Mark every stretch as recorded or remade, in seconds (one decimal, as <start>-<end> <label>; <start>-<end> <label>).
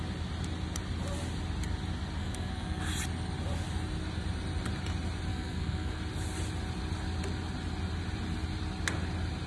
0.0-2.2 recorded; 2.2-2.8 remade; 2.8-5.3 recorded; 5.3-6.0 remade; 6.0-9.5 recorded